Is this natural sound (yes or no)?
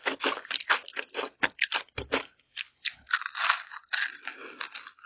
yes